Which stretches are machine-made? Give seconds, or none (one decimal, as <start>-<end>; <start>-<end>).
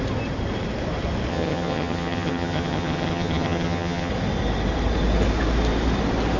1.3-4.1